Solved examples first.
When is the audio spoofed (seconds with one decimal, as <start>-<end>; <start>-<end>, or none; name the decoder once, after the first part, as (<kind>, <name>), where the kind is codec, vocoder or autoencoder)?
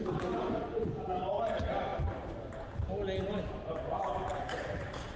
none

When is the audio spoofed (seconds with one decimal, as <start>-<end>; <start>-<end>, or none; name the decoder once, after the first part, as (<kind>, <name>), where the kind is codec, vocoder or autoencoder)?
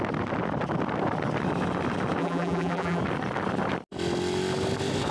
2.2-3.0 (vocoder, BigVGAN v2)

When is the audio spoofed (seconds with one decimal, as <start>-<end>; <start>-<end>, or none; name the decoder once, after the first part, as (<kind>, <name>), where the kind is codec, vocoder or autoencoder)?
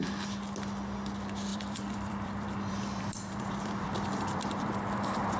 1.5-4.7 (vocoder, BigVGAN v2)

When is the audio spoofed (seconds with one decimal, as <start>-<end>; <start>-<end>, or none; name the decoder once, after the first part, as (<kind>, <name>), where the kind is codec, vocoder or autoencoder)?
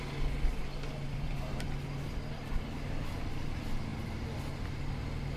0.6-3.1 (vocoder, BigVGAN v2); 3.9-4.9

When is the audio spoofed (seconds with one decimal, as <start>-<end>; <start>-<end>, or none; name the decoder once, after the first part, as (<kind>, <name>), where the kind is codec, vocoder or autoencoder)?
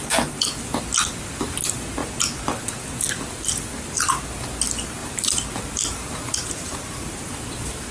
5.0-7.3 (vocoder, BigVGAN v2)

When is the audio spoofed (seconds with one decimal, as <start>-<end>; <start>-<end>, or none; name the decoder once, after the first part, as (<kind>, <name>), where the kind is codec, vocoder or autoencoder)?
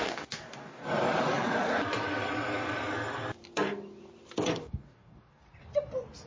0.0-0.8 (codec, DAC); 4.6-5.4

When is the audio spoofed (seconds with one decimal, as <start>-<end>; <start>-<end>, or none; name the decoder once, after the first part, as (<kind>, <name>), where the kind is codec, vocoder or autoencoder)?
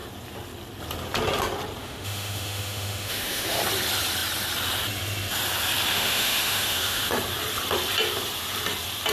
1.8-3.6 (autoencoder, DAC-VAE); 5.9-7.1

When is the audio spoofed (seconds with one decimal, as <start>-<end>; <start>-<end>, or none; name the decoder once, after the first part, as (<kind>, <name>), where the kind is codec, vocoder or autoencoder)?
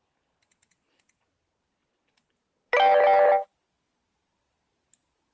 none